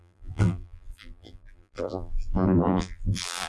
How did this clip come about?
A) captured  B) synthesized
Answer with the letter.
B